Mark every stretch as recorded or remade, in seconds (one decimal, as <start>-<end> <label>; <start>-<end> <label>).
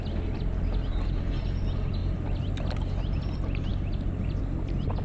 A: 0.0-5.0 recorded